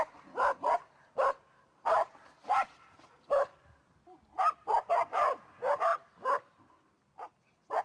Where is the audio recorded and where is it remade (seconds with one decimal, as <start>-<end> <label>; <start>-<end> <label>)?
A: 0.0-7.8 recorded